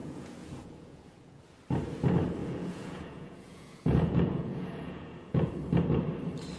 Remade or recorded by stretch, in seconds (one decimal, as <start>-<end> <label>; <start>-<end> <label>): 0.0-1.4 remade; 1.4-2.4 recorded; 2.4-5.5 remade; 5.5-6.6 recorded